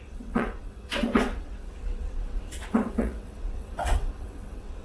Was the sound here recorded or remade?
remade